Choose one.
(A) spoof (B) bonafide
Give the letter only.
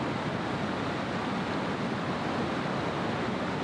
B